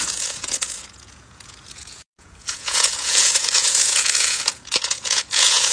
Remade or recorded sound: remade